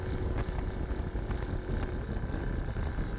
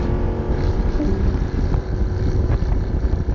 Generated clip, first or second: second